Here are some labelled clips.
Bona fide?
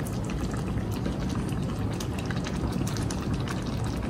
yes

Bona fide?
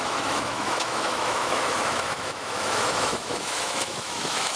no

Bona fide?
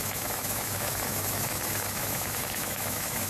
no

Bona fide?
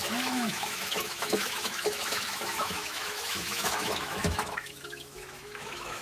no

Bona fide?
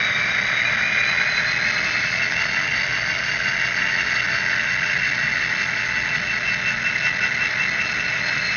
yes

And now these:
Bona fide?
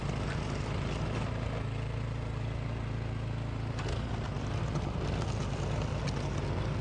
yes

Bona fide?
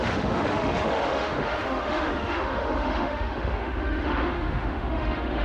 no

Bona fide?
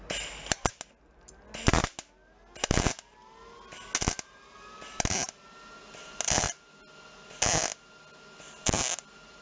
yes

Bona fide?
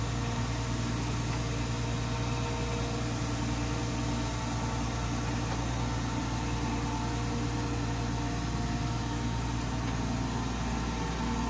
yes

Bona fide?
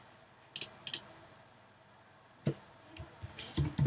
yes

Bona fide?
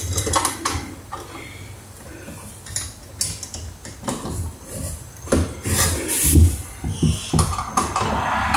yes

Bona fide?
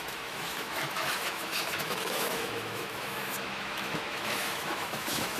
no